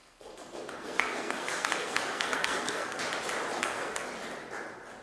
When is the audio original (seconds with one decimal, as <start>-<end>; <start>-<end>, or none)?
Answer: 3.0-3.6; 4.1-5.0

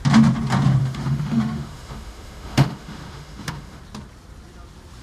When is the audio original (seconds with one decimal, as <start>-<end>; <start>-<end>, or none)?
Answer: 0.0-0.8; 3.8-5.0

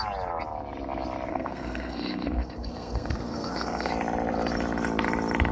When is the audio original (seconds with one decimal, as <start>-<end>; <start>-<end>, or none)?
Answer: 0.0-1.3; 3.9-5.5

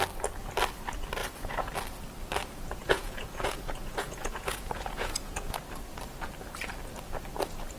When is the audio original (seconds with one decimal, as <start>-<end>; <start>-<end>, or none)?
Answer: 0.0-1.2; 1.7-2.8; 5.6-7.8

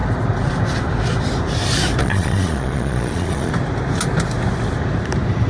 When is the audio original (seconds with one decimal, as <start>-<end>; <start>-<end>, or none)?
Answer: 0.0-2.0; 3.5-5.5

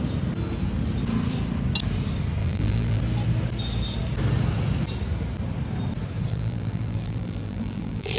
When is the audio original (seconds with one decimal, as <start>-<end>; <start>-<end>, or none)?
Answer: 0.0-2.4; 3.0-6.3

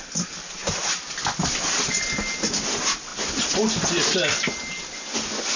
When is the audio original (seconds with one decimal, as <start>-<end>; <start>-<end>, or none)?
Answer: 0.0-5.6

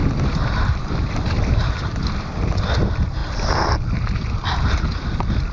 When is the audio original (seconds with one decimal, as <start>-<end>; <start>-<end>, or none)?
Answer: 2.3-5.5